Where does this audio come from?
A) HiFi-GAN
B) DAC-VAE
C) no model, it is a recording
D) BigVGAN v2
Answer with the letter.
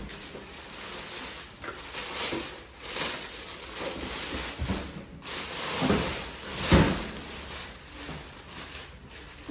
C